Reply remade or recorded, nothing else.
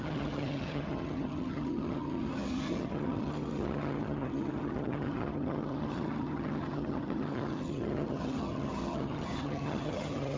remade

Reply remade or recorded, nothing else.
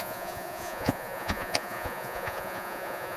remade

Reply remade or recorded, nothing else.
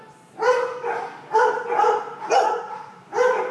recorded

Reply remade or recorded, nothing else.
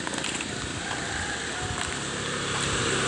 recorded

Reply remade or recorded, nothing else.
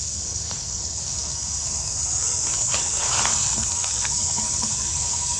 remade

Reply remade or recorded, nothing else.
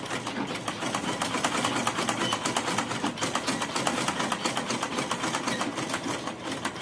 recorded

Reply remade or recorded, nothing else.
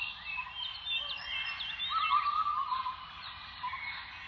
recorded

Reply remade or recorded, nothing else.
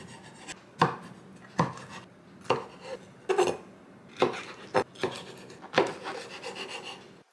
recorded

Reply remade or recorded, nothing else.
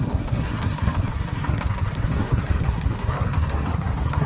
remade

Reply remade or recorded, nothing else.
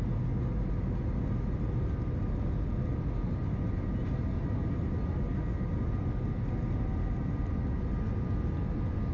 recorded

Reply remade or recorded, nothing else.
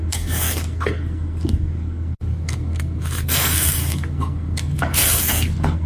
remade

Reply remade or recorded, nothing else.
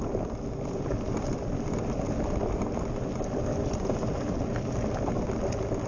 recorded